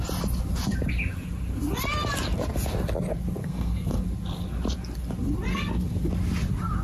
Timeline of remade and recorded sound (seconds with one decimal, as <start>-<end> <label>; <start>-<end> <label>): 0.0-3.4 recorded; 3.4-4.0 remade; 4.0-5.5 recorded; 5.5-6.1 remade; 6.1-6.8 recorded